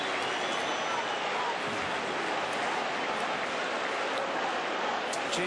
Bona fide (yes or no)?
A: yes